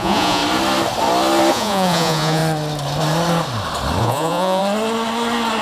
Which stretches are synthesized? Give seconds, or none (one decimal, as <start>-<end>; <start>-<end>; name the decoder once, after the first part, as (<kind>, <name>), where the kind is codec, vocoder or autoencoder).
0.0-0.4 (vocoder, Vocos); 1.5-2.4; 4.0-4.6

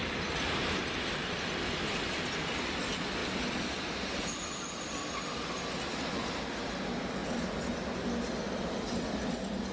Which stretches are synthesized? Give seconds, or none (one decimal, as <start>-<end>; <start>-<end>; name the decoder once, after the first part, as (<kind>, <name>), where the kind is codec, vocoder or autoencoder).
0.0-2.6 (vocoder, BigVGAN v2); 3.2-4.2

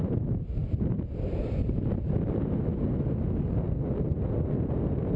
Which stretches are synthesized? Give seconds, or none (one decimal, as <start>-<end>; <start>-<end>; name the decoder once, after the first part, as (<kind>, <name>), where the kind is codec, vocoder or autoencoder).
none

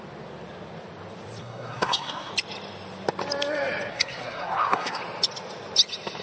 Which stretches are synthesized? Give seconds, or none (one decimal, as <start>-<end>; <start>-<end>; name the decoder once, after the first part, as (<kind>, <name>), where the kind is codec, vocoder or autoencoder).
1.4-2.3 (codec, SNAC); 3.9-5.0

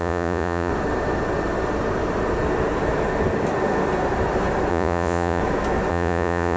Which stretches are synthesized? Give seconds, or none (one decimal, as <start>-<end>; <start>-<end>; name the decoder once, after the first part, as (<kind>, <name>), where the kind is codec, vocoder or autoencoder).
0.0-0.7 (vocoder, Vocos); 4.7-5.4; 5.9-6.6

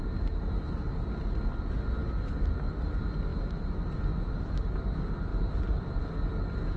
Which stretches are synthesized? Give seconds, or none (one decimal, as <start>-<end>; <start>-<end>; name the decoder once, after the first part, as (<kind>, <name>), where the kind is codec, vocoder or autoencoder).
none

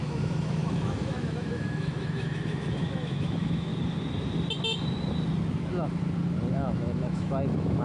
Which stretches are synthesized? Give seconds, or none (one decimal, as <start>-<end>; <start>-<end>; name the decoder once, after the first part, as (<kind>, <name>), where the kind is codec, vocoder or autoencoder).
0.0-3.7 (autoencoder, DAC-VAE); 6.5-7.8

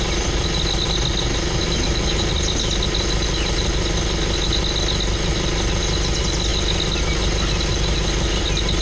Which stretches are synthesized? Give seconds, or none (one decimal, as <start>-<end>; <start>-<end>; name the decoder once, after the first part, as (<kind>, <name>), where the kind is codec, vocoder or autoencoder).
none